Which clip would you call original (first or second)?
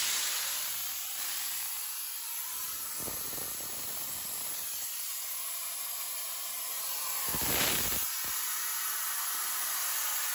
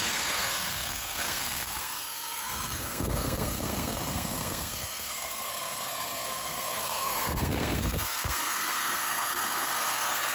first